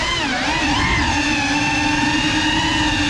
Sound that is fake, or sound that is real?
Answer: real